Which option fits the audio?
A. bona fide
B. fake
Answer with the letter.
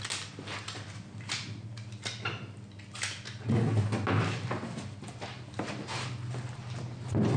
A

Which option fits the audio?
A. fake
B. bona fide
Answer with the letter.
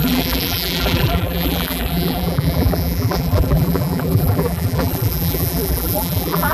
A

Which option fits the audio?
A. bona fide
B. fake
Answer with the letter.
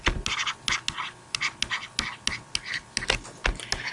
A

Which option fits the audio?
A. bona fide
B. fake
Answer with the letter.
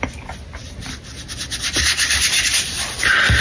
A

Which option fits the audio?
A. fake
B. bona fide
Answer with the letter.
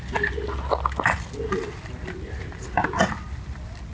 B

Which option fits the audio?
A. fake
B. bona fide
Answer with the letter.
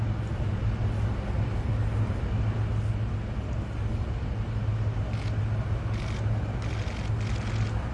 B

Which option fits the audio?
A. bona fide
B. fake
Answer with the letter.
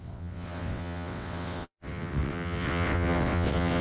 B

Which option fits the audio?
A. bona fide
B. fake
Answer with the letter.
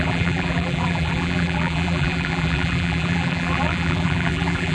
B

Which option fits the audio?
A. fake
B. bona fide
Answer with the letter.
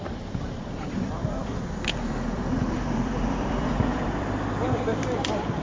A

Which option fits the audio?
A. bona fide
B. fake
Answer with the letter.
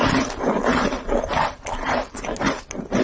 A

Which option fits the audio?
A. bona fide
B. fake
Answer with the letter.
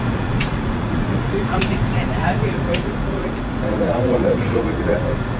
B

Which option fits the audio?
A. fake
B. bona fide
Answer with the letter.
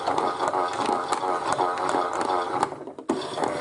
B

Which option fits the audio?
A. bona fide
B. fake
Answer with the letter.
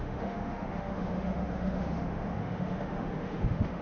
B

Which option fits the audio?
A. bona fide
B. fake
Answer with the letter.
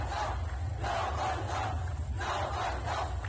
A